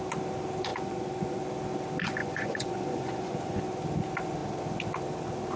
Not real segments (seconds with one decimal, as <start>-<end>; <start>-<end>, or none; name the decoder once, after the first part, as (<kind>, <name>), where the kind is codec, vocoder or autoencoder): 0.7-1.4 (vocoder, Vocos); 2.2-3.6

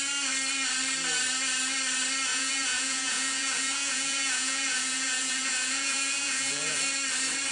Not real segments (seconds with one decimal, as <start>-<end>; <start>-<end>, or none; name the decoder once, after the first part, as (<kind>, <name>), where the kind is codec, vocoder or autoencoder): 2.3-6.8 (vocoder, Vocos)

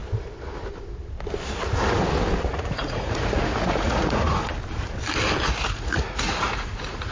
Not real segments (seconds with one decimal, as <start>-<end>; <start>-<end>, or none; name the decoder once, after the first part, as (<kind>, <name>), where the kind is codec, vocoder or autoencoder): 2.5-4.5 (vocoder, Vocos); 5.4-7.1